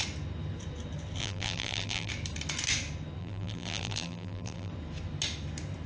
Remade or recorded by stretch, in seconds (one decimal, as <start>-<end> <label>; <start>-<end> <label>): 0.0-1.2 recorded; 1.2-2.1 remade; 2.1-3.2 recorded; 3.2-4.7 remade; 4.7-5.9 recorded

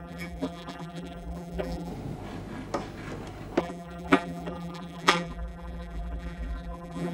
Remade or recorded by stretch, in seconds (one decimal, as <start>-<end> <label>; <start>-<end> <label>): 0.0-1.9 remade; 1.9-3.6 recorded; 3.6-7.1 remade

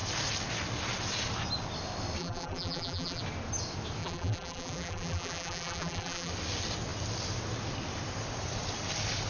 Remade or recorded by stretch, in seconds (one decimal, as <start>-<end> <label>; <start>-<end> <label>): 0.0-2.2 recorded; 2.2-3.2 remade; 3.2-4.0 recorded; 4.0-6.3 remade; 6.3-9.3 recorded

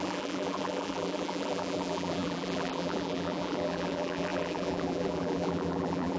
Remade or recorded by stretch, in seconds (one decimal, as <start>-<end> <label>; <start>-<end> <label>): 0.0-6.2 remade

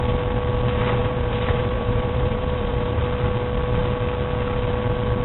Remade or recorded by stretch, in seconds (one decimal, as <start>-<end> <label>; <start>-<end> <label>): 0.0-1.0 recorded; 1.0-3.0 remade; 3.0-5.2 recorded